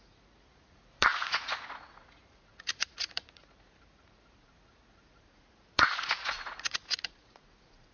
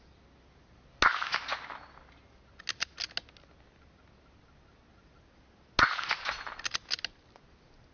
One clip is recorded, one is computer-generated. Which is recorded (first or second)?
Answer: second